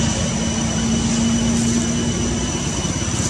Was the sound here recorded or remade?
recorded